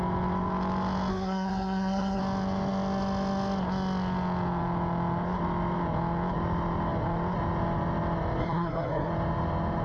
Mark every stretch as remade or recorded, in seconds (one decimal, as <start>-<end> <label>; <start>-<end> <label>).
0.0-1.1 recorded; 1.1-2.2 remade; 2.2-8.4 recorded; 8.4-9.1 remade; 9.1-9.8 recorded